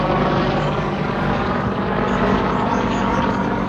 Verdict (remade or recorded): remade